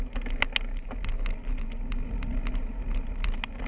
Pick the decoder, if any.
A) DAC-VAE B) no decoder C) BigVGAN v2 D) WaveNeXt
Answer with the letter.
B